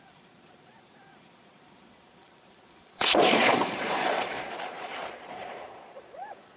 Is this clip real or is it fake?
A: fake